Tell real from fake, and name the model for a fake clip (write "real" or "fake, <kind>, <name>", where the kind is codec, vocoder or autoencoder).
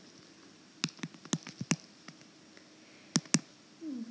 real